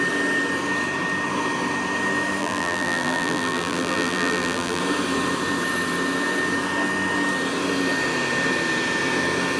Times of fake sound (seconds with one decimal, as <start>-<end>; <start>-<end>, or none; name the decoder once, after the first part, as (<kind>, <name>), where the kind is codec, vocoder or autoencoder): 2.4-4.8 (vocoder, BigVGAN v2)